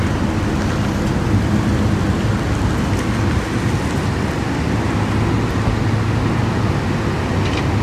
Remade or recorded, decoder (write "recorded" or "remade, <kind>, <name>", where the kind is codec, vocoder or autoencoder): recorded